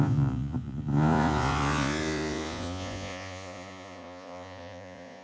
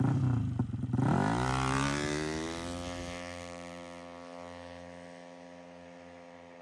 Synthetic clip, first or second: first